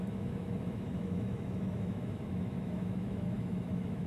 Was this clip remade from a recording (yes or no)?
yes